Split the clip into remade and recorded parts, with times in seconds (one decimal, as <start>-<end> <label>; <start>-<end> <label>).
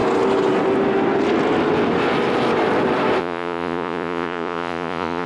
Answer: 0.0-3.2 recorded; 3.2-5.3 remade